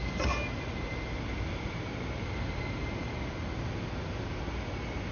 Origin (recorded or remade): recorded